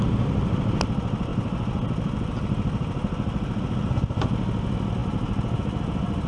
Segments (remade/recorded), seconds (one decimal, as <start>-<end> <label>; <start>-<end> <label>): 0.0-6.3 recorded